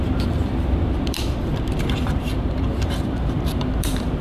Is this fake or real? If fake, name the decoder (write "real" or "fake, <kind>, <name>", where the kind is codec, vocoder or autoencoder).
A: fake, vocoder, BigVGAN v2